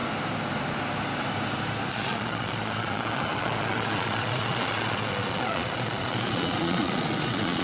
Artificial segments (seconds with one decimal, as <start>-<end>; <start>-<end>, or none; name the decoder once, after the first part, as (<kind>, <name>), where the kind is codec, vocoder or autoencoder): 1.9-7.6 (vocoder, Vocos)